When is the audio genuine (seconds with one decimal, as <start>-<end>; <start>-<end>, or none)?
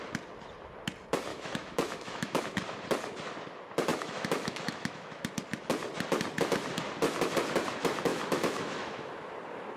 0.0-1.3; 2.4-3.9; 5.2-8.1; 9.1-9.8